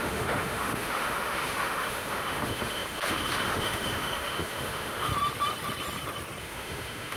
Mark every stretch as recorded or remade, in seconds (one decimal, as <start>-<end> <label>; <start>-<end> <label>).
0.0-5.1 remade; 5.1-6.4 recorded; 6.4-7.2 remade